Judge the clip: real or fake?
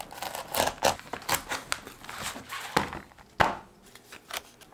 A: real